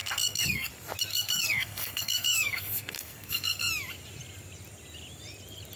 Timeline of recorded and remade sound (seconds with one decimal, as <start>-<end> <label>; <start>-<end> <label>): 0.0-0.7 remade; 0.7-1.1 recorded; 1.1-3.7 remade; 3.7-5.8 recorded